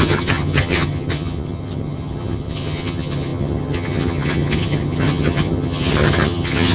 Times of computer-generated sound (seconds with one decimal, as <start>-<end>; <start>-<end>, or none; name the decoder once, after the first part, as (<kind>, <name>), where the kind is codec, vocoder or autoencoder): 0.0-6.7 (vocoder, HiFi-GAN)